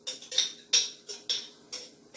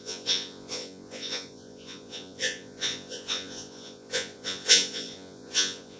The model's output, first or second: second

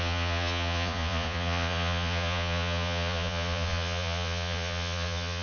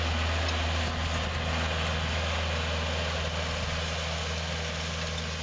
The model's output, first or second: first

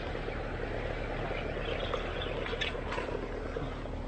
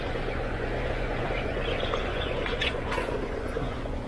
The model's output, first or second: second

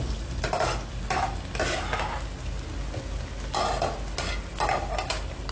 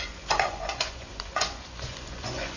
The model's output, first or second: second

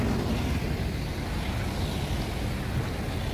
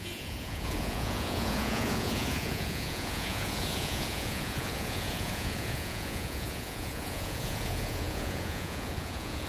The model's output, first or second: second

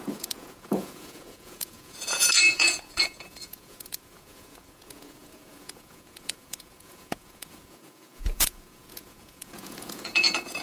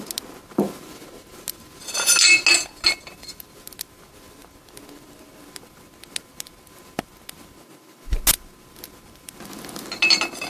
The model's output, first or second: first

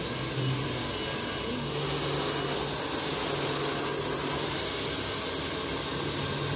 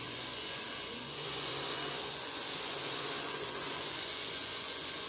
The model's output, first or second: second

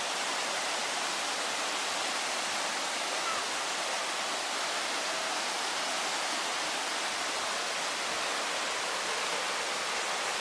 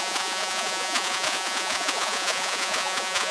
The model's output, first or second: second